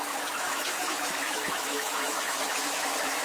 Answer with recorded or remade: remade